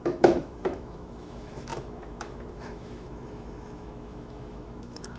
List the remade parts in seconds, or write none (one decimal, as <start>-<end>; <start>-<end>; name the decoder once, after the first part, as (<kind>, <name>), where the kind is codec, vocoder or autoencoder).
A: 0.0-5.2 (autoencoder, DAC-VAE)